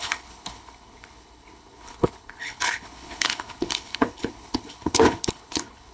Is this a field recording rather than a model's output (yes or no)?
no